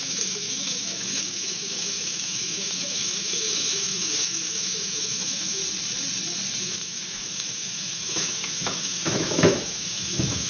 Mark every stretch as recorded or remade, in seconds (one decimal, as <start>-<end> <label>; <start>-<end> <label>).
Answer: 0.0-5.6 remade; 5.6-6.6 recorded; 6.6-10.5 remade